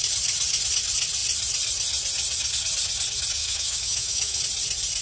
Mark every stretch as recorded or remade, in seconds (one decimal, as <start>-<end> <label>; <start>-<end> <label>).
0.0-3.4 recorded; 3.4-4.4 remade; 4.4-5.0 recorded